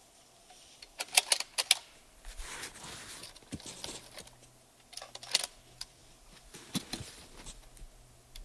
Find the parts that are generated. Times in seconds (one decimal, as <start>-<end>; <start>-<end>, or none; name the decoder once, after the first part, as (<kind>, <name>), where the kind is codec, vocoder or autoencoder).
none